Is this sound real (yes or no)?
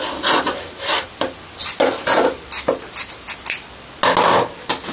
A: yes